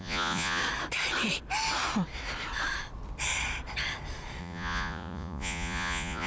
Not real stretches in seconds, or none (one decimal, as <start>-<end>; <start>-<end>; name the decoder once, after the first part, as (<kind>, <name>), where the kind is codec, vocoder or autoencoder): 0.0-0.6 (vocoder, Vocos); 4.4-6.3